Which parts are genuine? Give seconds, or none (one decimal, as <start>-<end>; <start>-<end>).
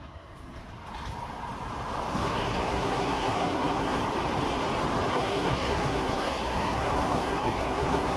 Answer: 0.6-2.1; 4.0-5.1